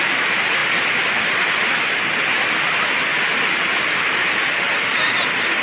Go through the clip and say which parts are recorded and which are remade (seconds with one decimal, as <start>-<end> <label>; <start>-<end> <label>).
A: 0.0-5.6 recorded